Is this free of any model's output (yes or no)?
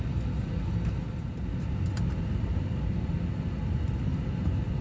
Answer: yes